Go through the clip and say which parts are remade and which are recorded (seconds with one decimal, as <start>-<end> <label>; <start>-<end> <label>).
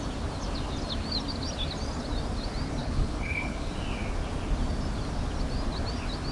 0.0-2.8 recorded; 2.8-3.7 remade; 3.7-6.3 recorded